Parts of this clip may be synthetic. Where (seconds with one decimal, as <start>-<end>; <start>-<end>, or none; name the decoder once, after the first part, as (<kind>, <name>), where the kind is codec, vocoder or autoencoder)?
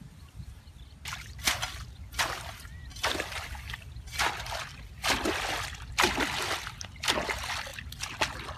none